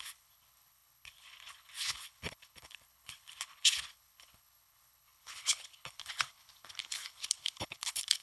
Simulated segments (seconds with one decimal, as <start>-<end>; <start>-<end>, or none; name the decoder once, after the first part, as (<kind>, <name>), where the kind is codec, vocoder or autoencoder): 0.0-8.2 (codec, HILCodec)